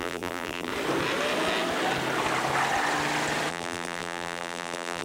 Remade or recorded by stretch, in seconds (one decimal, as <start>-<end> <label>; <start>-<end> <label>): 0.0-0.7 remade; 0.7-3.5 recorded; 3.5-5.0 remade